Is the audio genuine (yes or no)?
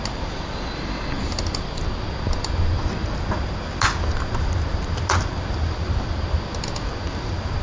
yes